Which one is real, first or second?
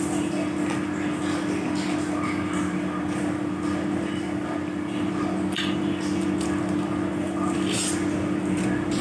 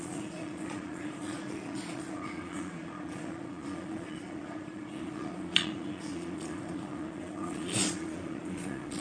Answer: first